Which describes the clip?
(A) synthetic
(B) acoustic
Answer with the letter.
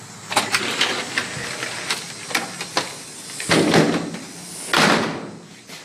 B